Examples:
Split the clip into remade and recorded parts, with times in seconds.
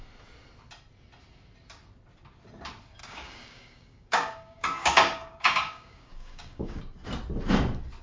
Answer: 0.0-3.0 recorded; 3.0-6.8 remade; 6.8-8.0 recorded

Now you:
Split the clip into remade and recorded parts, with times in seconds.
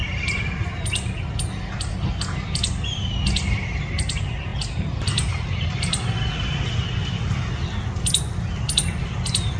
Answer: 0.0-9.6 recorded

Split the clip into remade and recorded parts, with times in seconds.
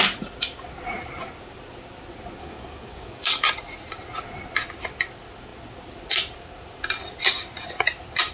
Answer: 0.0-2.4 recorded; 2.4-3.3 remade; 3.3-8.3 recorded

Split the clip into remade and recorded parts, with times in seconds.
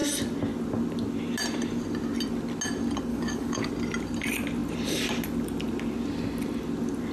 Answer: 0.0-3.1 recorded; 3.1-3.7 remade; 3.7-7.1 recorded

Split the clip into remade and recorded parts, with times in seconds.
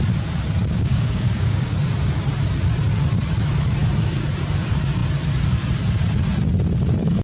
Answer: 0.0-0.6 recorded; 0.6-1.7 remade; 1.7-7.2 recorded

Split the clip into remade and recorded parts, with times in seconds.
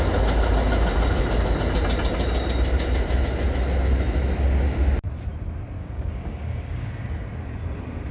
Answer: 0.0-5.8 recorded; 5.8-6.9 remade; 6.9-8.1 recorded